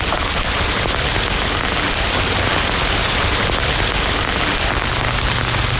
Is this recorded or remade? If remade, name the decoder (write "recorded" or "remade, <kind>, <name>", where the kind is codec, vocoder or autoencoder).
recorded